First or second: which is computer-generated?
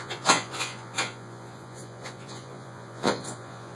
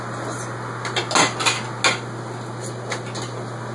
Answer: first